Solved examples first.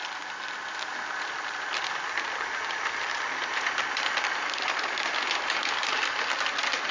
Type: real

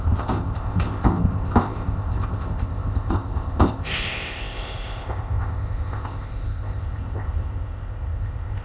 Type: fake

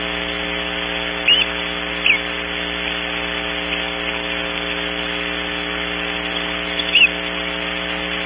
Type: real